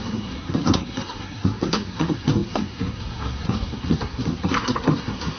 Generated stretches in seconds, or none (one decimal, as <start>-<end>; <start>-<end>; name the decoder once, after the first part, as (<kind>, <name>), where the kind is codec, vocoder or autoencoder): 0.0-5.4 (codec, SNAC)